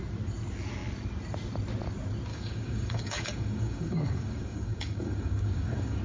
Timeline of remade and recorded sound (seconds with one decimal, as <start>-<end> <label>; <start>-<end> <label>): 0.0-2.3 recorded; 2.3-6.0 remade